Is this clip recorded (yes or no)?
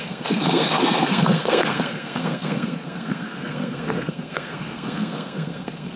no